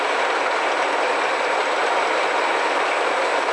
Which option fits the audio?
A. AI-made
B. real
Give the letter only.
B